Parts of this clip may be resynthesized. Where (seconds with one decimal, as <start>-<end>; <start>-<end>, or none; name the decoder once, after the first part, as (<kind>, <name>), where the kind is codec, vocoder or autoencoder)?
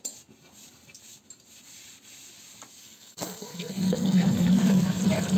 2.8-5.0 (codec, SNAC)